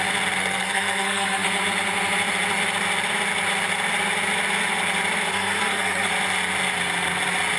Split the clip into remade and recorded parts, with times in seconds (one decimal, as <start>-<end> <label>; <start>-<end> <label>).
0.0-0.4 recorded; 0.4-1.5 remade; 1.5-5.3 recorded; 5.3-6.1 remade; 6.1-7.6 recorded